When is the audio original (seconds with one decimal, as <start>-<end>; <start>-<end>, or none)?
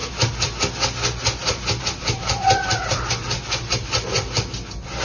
0.0-5.0